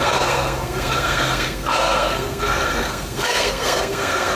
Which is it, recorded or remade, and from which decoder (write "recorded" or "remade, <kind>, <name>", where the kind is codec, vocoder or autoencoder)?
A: remade, codec, SNAC